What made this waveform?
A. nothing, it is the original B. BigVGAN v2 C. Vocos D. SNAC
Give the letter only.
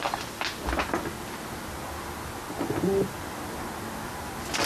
A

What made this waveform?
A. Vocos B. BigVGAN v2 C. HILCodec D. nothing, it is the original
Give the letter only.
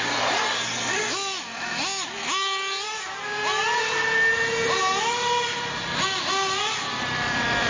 D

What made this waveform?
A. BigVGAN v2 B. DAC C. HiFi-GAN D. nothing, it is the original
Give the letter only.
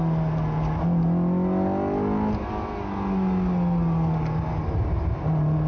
D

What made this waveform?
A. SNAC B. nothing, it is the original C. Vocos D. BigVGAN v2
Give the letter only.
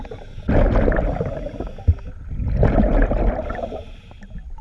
B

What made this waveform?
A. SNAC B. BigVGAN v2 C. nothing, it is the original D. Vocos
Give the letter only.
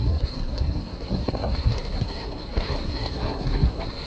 A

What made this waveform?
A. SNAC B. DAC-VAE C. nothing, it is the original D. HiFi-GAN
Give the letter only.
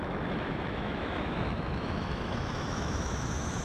B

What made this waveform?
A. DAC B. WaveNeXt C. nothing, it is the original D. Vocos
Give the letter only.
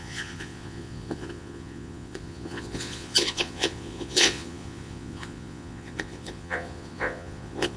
D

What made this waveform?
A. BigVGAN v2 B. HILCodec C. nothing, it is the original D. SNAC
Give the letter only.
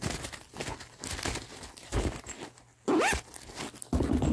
C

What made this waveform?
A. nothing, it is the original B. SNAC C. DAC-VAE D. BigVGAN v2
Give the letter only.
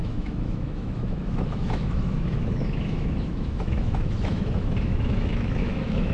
C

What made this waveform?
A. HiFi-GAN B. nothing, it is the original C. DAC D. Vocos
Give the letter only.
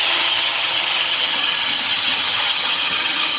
A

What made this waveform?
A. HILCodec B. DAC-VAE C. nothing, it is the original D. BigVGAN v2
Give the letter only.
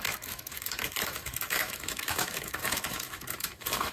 B